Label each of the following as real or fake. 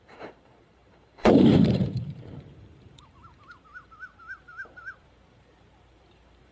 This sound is fake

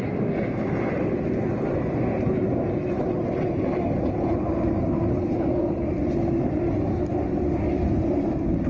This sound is real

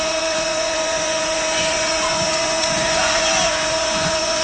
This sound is fake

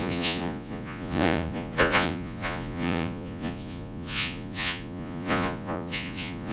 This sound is fake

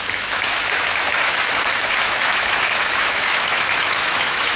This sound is fake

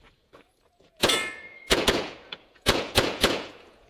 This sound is fake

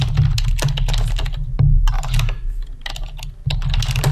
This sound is real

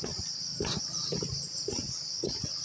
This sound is real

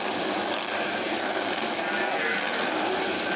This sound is real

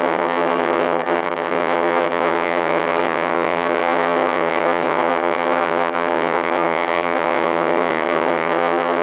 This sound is fake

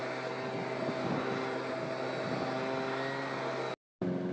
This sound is real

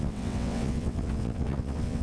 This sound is fake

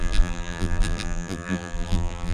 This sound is fake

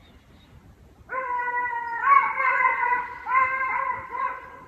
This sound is fake